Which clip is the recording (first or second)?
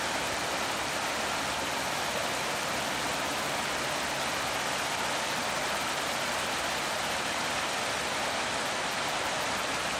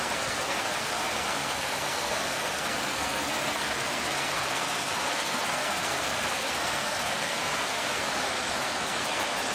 first